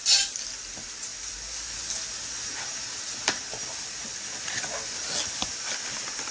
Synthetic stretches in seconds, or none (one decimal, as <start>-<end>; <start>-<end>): none